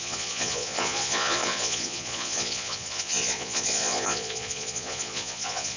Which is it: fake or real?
fake